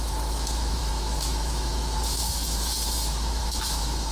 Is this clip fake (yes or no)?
yes